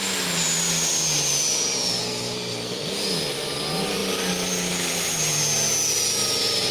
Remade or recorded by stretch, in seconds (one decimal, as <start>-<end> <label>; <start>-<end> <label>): 0.0-2.0 recorded; 2.0-2.9 remade; 2.9-6.7 recorded